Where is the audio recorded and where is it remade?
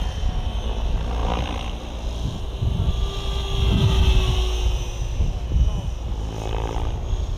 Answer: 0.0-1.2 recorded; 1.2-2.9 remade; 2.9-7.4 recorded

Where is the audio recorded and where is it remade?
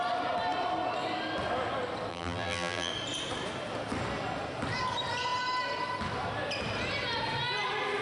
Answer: 0.0-2.1 recorded; 2.1-2.9 remade; 2.9-8.0 recorded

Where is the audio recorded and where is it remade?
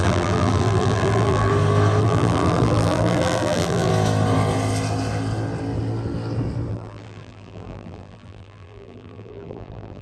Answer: 0.0-1.5 remade; 1.5-2.0 recorded; 2.0-3.9 remade; 3.9-6.7 recorded; 6.7-10.0 remade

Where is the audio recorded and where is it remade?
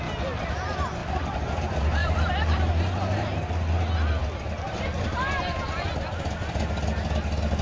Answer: 0.0-1.0 recorded; 1.0-1.5 remade; 1.5-2.0 recorded; 2.0-2.7 remade; 2.7-7.6 recorded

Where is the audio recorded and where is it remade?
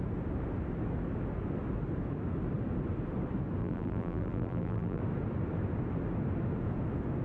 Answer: 0.0-3.6 recorded; 3.6-5.0 remade; 5.0-7.2 recorded